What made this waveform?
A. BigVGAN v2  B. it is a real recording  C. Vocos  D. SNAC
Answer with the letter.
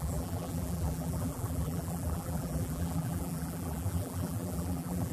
A